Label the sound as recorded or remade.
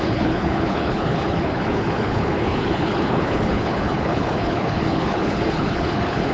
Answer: remade